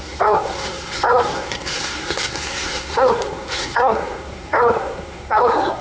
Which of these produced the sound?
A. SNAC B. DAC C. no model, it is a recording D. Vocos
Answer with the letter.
A